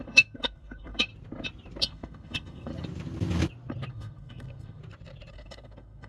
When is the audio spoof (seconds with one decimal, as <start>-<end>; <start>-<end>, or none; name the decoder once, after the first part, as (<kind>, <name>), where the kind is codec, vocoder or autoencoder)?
0.0-1.1 (codec, SNAC); 1.8-2.7; 3.9-4.8; 5.3-6.1